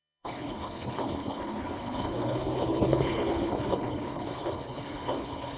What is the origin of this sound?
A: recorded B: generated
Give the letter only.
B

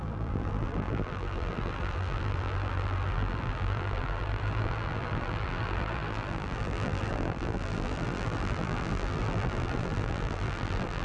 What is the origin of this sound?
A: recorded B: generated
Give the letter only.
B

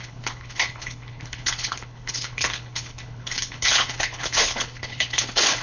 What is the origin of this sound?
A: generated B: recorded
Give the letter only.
A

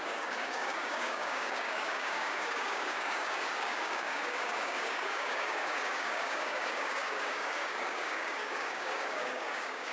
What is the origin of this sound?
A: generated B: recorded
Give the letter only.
A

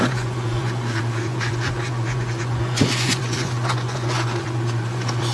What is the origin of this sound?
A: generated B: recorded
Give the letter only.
A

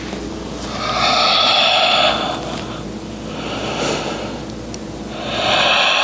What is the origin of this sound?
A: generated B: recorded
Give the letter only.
B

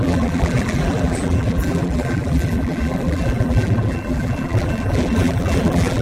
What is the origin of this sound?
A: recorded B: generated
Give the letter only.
B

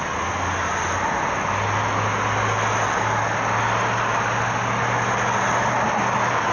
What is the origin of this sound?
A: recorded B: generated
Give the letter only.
A